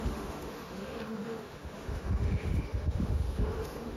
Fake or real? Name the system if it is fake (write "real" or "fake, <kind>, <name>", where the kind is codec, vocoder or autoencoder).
fake, autoencoder, DAC-VAE